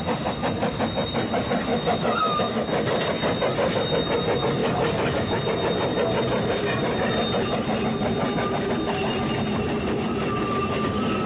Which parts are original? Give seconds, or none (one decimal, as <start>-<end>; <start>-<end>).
0.0-1.7; 2.6-4.6; 5.4-11.3